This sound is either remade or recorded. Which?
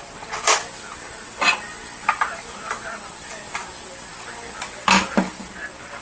recorded